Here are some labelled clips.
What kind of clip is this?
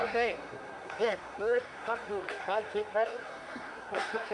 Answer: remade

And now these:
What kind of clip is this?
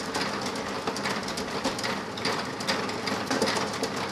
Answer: recorded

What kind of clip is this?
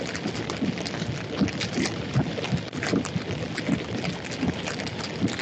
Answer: remade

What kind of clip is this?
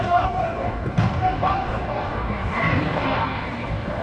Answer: remade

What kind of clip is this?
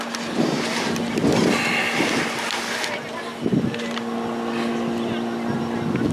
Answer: recorded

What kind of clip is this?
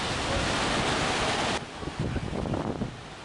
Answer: recorded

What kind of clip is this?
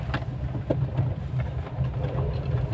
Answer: recorded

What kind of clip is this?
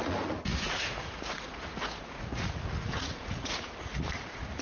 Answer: remade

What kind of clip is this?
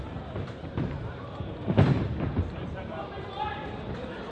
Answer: remade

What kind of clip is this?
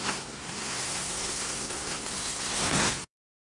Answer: remade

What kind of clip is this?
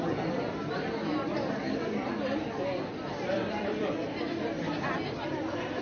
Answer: recorded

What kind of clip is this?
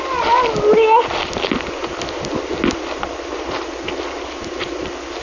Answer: recorded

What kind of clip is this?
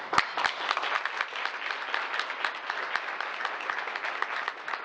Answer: recorded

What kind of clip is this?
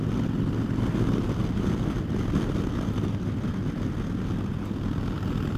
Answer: recorded